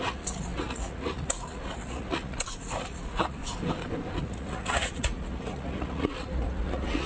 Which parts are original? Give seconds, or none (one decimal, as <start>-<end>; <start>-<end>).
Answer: 3.4-4.2